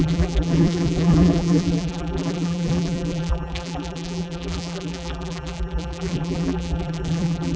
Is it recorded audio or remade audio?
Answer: remade